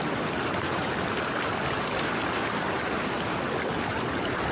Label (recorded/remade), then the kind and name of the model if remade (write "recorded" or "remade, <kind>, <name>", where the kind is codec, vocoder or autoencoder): recorded